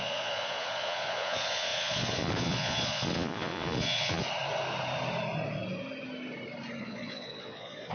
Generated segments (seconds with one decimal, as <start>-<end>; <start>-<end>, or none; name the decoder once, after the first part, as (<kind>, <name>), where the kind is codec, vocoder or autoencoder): 0.0-4.2 (vocoder, Vocos); 6.8-7.9